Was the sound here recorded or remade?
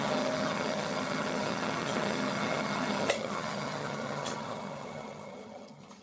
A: remade